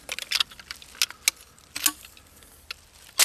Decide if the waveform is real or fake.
real